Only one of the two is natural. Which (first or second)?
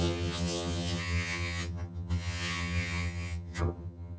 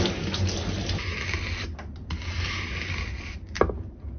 second